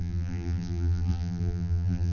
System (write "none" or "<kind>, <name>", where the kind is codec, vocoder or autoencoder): vocoder, BigVGAN v2